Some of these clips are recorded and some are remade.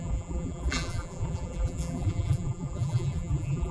remade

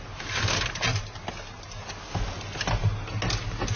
recorded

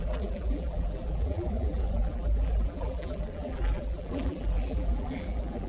remade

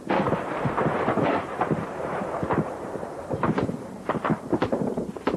remade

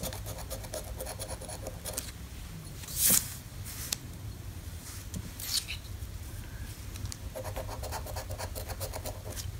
recorded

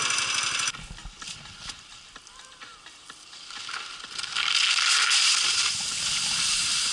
recorded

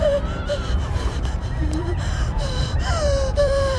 remade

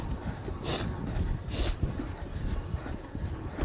recorded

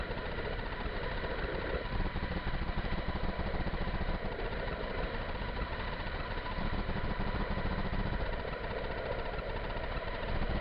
remade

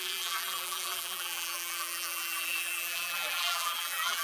remade